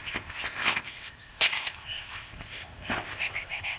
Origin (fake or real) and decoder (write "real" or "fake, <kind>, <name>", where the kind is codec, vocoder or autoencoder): fake, codec, ZipCodec